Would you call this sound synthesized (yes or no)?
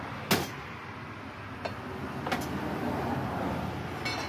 no